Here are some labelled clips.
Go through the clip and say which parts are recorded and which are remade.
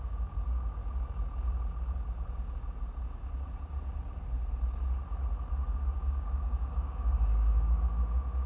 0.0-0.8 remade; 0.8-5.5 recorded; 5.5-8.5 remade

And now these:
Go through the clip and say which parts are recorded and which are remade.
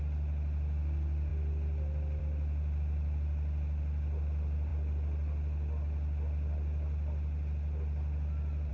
0.0-8.7 recorded